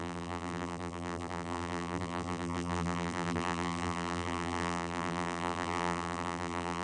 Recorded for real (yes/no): no